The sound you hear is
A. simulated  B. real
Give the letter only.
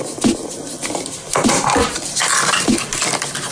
B